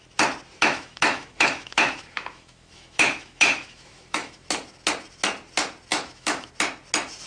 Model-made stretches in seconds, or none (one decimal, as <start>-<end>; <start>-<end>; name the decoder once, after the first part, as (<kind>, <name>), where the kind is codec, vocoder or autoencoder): 0.6-4.5 (autoencoder, DAC-VAE); 5.9-6.5